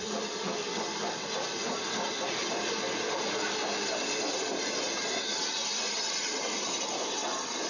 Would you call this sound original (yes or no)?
yes